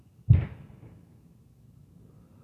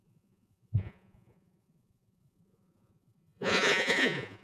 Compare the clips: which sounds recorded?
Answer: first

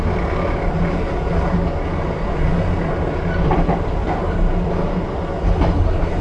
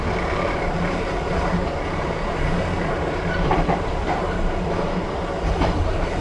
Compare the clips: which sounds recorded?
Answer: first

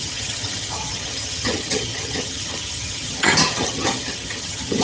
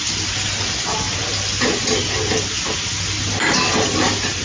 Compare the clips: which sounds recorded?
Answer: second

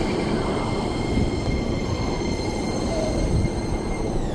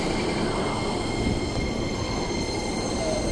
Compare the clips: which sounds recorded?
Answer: second